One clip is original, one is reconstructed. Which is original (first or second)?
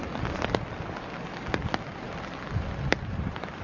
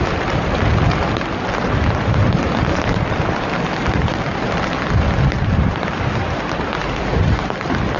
first